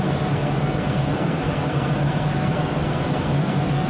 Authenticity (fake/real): fake